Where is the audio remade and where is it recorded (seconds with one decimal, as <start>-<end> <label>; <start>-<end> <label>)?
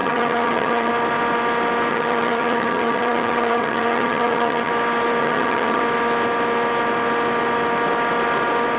0.0-0.9 remade; 0.9-1.9 recorded; 1.9-4.7 remade; 4.7-5.2 recorded; 5.2-5.8 remade; 5.8-8.8 recorded